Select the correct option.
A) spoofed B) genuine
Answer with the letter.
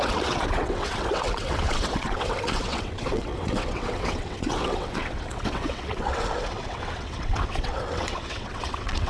A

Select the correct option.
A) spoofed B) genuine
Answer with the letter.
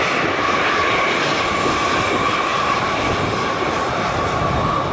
B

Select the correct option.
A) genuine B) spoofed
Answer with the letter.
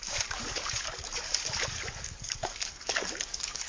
B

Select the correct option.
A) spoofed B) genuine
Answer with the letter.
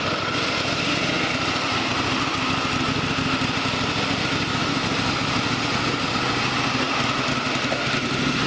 A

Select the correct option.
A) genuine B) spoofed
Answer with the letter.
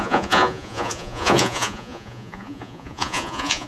B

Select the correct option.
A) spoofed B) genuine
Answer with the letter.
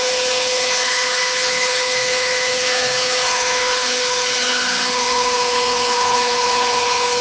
A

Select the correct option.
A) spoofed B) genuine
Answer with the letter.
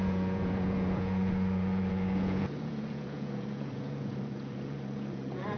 A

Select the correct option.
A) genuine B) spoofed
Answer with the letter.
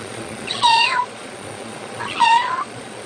B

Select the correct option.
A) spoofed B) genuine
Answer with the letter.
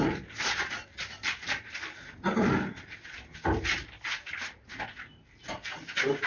B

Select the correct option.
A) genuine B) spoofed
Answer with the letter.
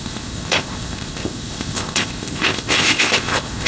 B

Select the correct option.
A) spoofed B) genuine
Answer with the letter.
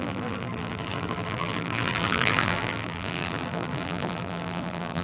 A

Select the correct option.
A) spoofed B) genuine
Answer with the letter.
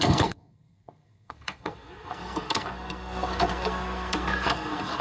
A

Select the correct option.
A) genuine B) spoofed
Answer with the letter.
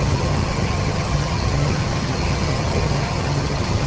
B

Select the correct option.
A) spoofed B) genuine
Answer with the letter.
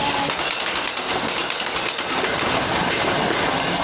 B